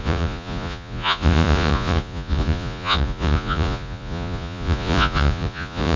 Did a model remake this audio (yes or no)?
yes